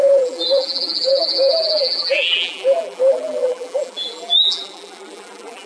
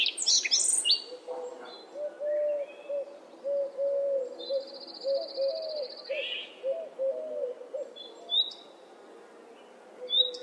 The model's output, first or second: first